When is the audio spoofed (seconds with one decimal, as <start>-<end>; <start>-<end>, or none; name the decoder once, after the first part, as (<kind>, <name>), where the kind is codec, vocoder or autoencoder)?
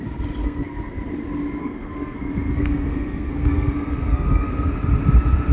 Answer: 0.4-0.9 (codec, SNAC); 1.6-4.5